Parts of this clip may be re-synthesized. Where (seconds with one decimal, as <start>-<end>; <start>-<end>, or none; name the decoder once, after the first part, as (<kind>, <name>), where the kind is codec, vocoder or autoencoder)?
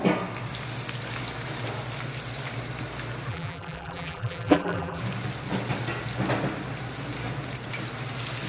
3.3-5.0 (vocoder, BigVGAN v2)